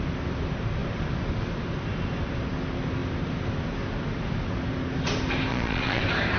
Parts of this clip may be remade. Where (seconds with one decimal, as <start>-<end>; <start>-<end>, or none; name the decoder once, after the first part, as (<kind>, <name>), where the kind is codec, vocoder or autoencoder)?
5.5-6.0 (vocoder, Vocos)